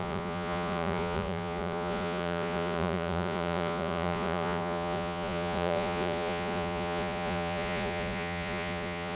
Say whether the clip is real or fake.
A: fake